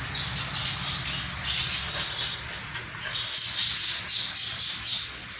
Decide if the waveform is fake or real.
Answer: real